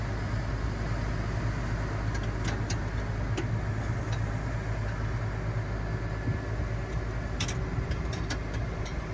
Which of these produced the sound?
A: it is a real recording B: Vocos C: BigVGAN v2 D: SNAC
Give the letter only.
A